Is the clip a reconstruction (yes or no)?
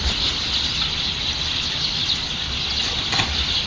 no